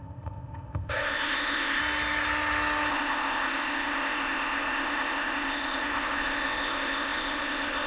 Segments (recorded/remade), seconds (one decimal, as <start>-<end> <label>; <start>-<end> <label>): 0.0-1.8 remade; 1.8-2.9 recorded; 2.9-7.9 remade